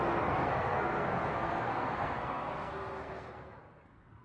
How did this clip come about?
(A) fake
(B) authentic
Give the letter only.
A